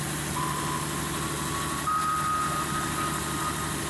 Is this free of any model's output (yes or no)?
yes